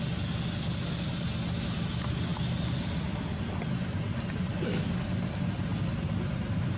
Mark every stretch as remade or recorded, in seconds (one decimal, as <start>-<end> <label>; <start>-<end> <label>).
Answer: 0.0-6.8 recorded